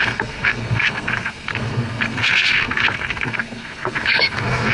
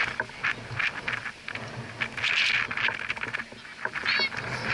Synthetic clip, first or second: first